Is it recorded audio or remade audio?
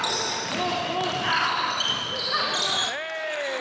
recorded